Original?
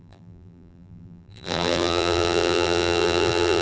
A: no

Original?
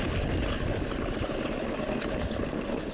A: yes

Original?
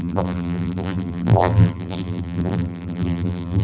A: no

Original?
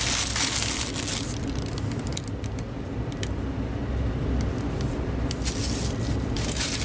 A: yes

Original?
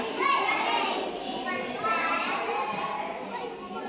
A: no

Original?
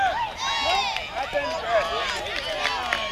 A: yes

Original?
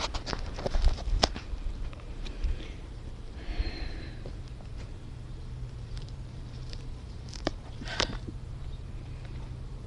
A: no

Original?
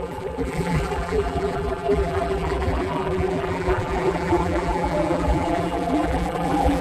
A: no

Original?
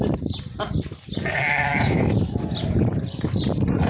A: no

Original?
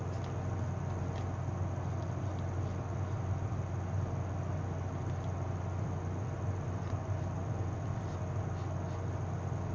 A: yes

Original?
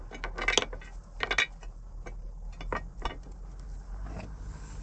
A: yes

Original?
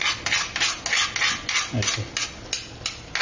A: yes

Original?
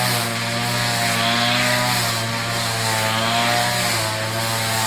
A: yes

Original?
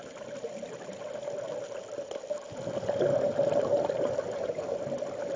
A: yes